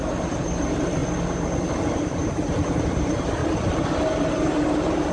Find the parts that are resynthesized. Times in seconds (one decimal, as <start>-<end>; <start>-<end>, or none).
0.0-1.0; 1.9-3.4; 4.3-5.1